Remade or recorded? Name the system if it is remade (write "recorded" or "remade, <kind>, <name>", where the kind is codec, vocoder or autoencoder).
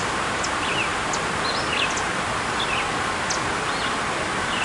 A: recorded